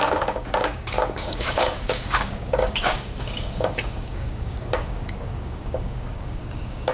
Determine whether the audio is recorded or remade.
remade